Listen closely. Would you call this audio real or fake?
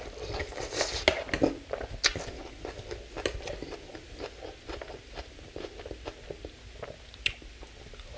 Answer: real